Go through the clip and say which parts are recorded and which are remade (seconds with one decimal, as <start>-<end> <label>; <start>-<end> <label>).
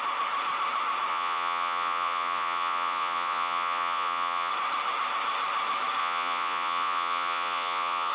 0.0-1.1 recorded; 1.1-4.5 remade; 4.5-6.0 recorded; 6.0-8.1 remade